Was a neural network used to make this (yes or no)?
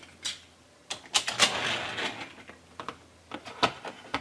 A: no